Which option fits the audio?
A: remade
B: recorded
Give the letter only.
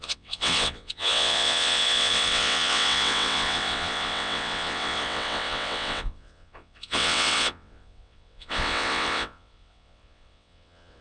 A